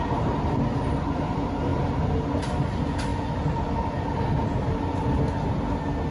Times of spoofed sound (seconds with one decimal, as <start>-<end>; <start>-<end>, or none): none